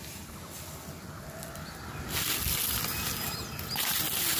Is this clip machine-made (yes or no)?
no